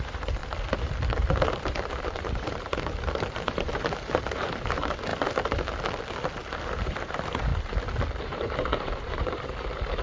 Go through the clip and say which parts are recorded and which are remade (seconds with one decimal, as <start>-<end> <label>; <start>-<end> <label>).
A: 0.0-0.4 remade; 0.4-1.9 recorded; 1.9-5.1 remade; 5.1-6.6 recorded; 6.6-7.5 remade; 7.5-8.2 recorded; 8.2-10.0 remade